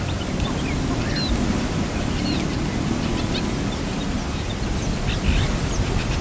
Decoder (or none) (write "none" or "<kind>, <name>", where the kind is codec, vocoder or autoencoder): none